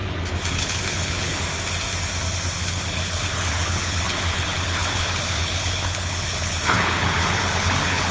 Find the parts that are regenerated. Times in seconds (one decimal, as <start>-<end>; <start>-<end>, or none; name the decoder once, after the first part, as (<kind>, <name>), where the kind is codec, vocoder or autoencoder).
0.5-1.3 (codec, HILCodec); 2.6-8.1